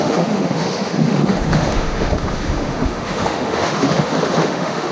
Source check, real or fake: fake